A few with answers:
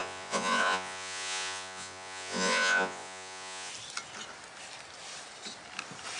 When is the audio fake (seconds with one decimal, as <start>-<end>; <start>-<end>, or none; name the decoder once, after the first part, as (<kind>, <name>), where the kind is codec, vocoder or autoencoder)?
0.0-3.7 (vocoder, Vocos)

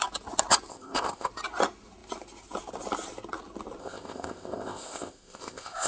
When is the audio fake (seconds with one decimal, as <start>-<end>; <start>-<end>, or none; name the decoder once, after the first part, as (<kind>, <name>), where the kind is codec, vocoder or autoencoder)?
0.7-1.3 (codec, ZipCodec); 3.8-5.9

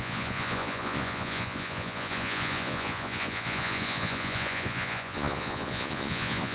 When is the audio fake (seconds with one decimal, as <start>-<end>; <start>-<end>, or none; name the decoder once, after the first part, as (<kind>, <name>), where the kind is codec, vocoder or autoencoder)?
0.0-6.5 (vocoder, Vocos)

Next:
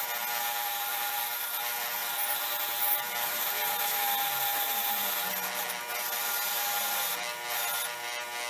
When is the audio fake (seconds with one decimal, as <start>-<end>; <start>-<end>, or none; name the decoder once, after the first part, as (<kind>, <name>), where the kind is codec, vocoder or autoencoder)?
0.9-1.5 (vocoder, BigVGAN v2)

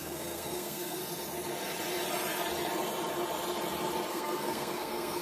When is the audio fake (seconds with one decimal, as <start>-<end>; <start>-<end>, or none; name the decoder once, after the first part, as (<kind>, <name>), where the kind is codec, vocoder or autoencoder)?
0.0-1.0 (codec, SNAC); 4.1-5.2

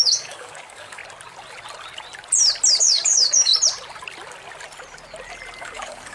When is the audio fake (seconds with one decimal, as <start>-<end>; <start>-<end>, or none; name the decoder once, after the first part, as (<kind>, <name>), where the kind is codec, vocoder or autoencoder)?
0.0-1.0 (codec, DAC); 2.8-3.5; 5.6-6.1